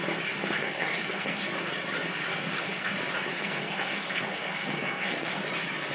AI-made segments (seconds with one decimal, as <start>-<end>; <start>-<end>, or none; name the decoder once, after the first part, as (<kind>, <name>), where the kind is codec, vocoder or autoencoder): 0.4-1.4 (codec, SNAC); 2.3-2.9; 3.3-5.4

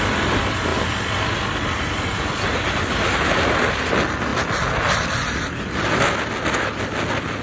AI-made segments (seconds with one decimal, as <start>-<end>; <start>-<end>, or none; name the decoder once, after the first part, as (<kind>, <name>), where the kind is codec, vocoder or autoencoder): none

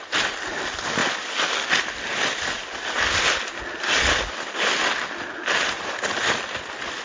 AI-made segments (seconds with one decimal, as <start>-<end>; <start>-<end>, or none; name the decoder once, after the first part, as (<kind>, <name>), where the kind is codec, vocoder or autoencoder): none

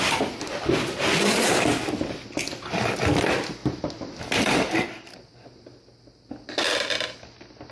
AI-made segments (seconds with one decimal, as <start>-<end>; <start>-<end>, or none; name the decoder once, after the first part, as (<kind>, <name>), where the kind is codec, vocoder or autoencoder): none